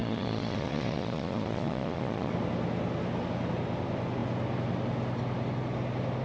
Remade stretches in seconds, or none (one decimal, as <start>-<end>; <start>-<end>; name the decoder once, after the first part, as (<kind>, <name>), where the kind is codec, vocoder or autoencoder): 0.0-2.3 (vocoder, Vocos)